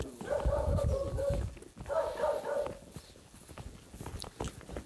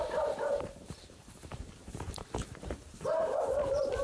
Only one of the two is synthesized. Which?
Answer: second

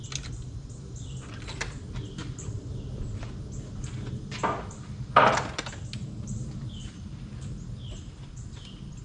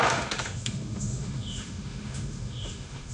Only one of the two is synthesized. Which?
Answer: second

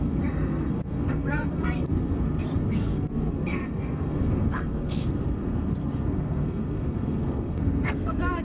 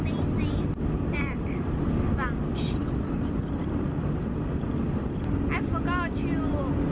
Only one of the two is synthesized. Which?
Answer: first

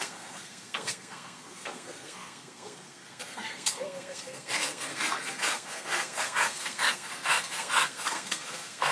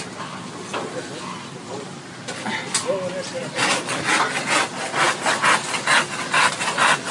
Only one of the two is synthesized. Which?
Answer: first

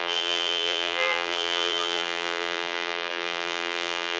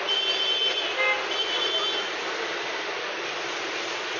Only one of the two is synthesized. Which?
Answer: first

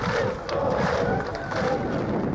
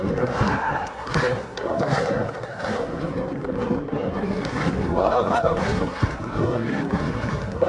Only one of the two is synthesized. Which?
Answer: second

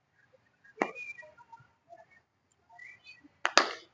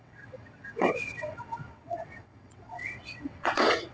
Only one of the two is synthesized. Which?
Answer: second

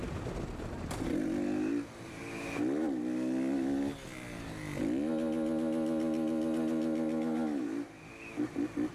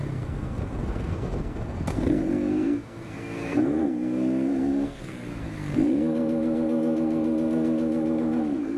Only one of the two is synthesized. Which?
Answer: second